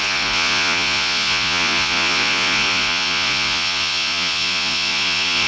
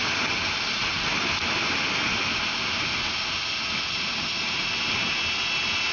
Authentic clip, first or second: second